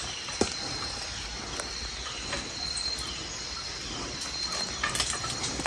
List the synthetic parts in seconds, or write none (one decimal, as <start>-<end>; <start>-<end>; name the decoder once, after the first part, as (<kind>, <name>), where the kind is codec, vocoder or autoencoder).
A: none